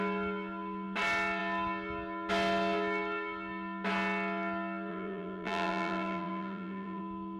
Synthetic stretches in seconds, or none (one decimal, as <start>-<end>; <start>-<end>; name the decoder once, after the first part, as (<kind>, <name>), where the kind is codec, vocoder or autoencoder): 4.9-7.0 (vocoder, BigVGAN v2)